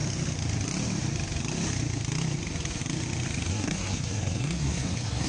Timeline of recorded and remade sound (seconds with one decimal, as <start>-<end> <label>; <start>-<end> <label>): 0.0-3.5 recorded; 3.5-5.3 remade